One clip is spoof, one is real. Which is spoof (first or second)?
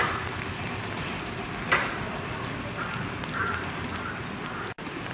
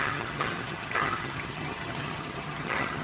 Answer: second